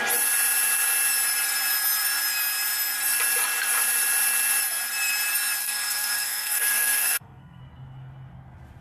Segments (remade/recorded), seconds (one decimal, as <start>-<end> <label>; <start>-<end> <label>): 0.0-5.6 recorded; 5.6-7.6 remade; 7.6-8.8 recorded